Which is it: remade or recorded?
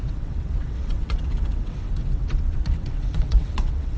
remade